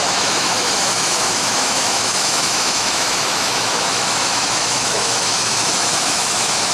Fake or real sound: fake